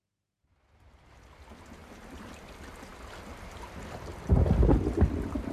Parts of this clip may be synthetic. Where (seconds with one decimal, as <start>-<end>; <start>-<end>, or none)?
1.8-2.5